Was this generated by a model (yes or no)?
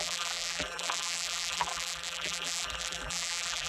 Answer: yes